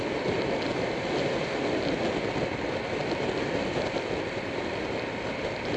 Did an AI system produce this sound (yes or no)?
no